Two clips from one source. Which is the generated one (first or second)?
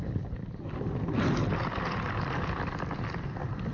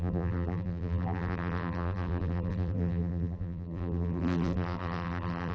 second